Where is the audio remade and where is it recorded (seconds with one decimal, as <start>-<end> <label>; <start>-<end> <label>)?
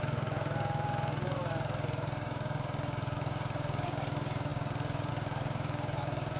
0.0-6.4 remade